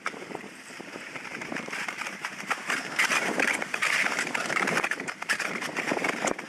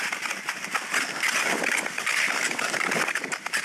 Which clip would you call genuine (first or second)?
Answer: second